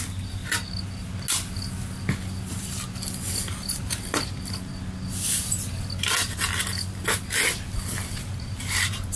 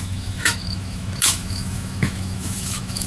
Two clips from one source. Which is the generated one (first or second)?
second